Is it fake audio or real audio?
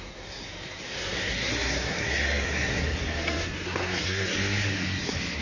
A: fake